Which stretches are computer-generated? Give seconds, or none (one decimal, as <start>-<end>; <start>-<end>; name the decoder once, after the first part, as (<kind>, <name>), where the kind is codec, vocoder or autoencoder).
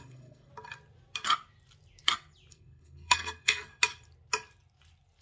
0.0-0.5 (codec, SNAC); 2.5-3.7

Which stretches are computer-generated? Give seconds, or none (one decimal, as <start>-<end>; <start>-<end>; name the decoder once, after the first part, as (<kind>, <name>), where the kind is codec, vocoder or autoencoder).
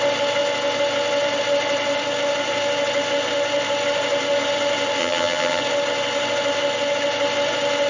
5.0-5.6 (vocoder, HiFi-GAN)